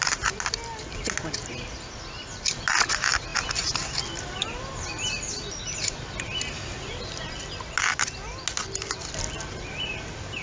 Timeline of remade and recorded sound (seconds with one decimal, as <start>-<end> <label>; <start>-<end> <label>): 0.0-10.4 recorded